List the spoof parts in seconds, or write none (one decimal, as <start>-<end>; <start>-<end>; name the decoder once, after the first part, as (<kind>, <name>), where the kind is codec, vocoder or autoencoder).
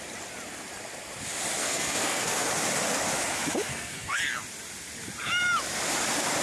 1.6-2.5 (codec, SNAC); 3.7-4.2